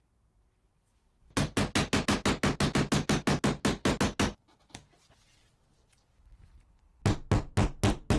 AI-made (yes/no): no